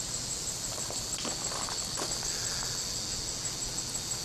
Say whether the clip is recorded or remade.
recorded